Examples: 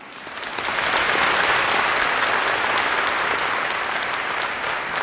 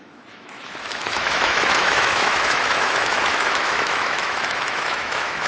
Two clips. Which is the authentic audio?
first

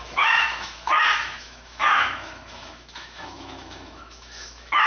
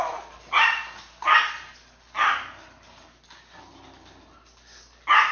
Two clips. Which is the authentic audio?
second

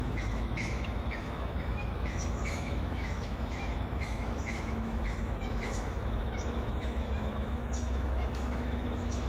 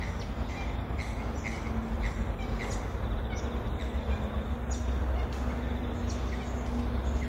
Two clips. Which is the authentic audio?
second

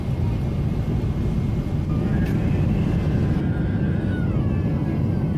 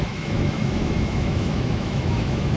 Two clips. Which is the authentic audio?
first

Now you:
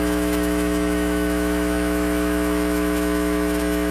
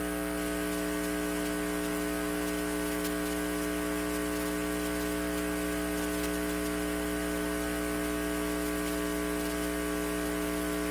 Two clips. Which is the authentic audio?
second